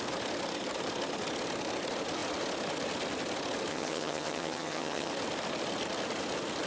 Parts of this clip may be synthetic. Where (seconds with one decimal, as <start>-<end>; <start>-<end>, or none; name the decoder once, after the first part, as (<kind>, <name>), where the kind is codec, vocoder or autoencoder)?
3.7-5.1 (vocoder, HiFi-GAN)